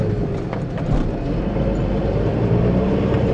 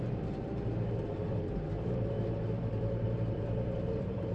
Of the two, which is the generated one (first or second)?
second